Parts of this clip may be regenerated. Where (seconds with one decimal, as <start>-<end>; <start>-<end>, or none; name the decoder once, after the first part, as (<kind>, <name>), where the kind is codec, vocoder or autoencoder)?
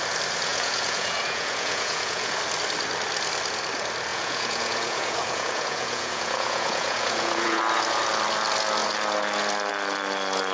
0.5-2.4 (vocoder, Vocos); 4.1-7.6